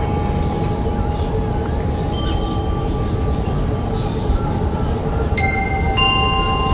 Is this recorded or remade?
recorded